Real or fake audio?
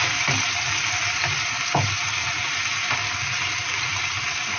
real